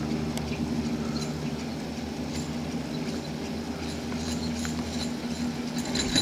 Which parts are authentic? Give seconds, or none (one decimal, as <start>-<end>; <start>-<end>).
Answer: 0.0-6.2